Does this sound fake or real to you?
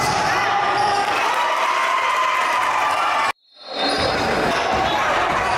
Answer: fake